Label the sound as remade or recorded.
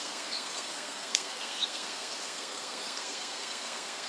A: remade